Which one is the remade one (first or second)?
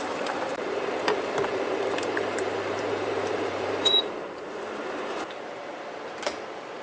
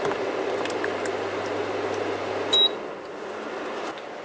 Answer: first